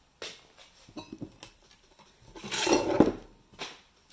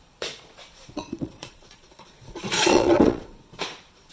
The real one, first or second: first